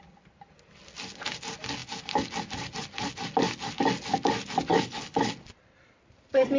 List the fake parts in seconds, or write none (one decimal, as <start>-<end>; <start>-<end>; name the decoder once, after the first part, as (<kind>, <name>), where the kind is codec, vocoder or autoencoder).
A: 4.7-5.3 (codec, HILCodec)